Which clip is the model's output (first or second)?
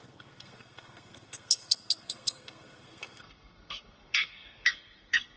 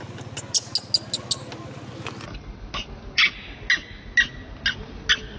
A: first